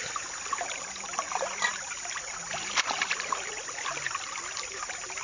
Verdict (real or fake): fake